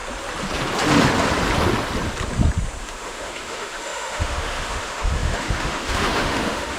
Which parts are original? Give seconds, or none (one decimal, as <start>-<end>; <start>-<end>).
0.0-2.8

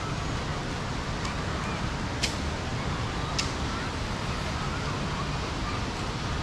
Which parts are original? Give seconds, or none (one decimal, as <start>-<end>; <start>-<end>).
0.0-6.4